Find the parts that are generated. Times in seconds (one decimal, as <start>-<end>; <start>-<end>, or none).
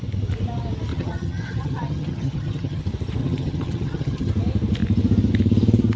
0.9-2.8; 3.2-4.3